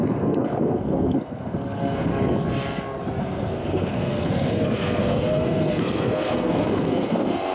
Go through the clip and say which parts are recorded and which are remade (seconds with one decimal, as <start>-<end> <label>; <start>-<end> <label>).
0.0-2.1 remade; 2.1-3.2 recorded; 3.2-7.5 remade